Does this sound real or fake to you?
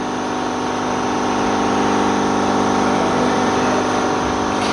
real